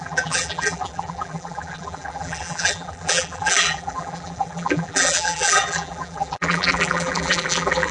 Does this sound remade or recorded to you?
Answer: remade